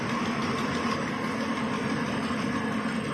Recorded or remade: recorded